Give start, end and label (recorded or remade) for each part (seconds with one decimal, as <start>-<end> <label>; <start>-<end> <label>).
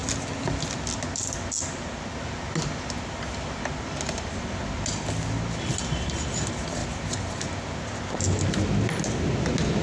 0.0-9.8 recorded